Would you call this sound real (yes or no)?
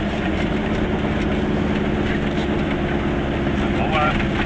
yes